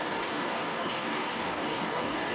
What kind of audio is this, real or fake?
fake